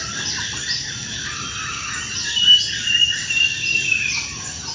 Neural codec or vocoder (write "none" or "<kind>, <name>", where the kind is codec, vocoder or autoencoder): none